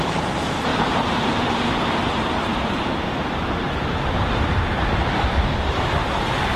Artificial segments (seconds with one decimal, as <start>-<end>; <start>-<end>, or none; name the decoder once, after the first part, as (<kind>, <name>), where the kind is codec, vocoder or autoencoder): 0.0-6.6 (vocoder, BigVGAN v2)